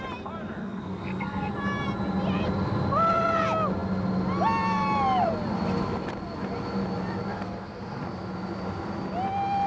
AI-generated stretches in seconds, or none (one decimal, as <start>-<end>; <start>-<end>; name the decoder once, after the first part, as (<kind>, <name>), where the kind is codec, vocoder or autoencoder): 0.6-1.5 (codec, SNAC); 7.3-8.0